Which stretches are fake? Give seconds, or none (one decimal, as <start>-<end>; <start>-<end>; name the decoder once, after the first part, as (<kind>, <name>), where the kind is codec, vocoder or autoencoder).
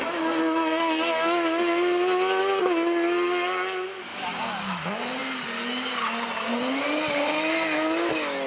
4.1-4.8 (autoencoder, DAC-VAE)